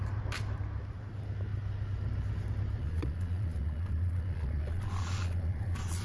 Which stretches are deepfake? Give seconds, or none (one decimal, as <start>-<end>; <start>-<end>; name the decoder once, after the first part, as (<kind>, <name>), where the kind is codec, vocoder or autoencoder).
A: 2.8-6.0 (vocoder, Vocos)